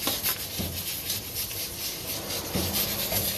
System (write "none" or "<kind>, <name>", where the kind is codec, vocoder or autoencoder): none